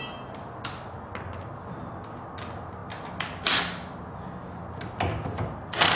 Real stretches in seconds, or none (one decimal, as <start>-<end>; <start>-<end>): 0.0-6.0